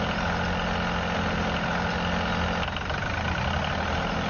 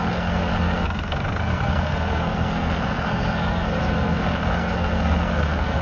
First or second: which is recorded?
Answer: first